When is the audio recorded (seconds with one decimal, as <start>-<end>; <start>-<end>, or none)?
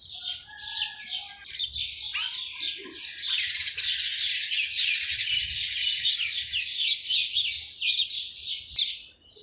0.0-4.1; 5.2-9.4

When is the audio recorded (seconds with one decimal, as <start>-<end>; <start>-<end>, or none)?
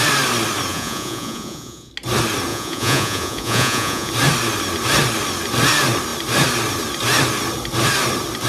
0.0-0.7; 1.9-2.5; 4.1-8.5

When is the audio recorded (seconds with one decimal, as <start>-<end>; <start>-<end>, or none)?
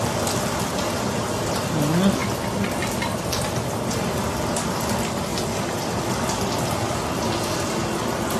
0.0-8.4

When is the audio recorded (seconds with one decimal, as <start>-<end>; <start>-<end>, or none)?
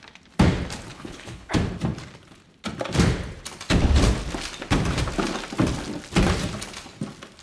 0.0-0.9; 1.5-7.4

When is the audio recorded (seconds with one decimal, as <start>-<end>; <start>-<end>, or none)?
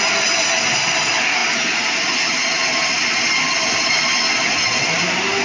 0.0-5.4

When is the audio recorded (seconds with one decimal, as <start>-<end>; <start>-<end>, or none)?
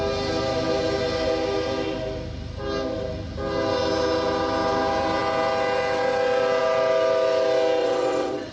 0.0-7.8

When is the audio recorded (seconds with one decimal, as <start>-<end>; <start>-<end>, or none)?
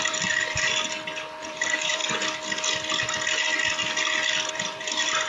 0.7-1.4; 2.0-4.5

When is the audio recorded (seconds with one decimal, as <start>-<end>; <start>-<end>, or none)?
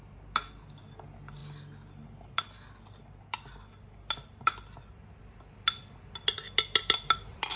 0.0-7.6